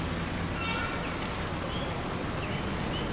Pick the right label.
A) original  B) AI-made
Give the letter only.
A